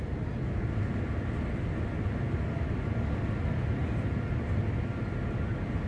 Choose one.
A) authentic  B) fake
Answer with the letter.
A